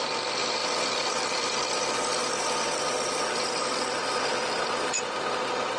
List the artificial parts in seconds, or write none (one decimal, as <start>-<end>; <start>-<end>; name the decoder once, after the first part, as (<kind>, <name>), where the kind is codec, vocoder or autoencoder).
0.6-3.2 (vocoder, BigVGAN v2); 4.3-5.8